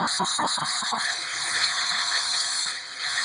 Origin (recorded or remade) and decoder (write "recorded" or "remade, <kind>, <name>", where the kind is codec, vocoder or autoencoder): remade, codec, HILCodec